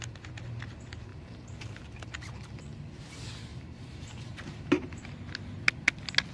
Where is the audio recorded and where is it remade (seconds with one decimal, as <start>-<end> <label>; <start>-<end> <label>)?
0.0-1.1 recorded; 1.1-2.5 remade; 2.5-3.5 recorded; 3.5-5.0 remade; 5.0-6.3 recorded